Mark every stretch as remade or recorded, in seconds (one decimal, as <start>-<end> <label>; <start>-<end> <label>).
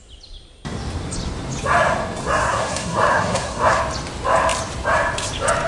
0.0-2.4 recorded; 2.4-3.8 remade; 3.8-5.7 recorded